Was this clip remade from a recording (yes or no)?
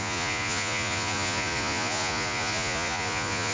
yes